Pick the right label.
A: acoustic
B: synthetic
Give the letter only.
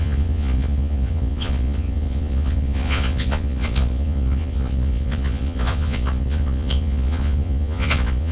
B